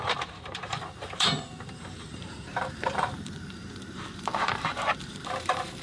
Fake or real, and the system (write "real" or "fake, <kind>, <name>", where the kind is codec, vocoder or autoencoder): fake, vocoder, BigVGAN v2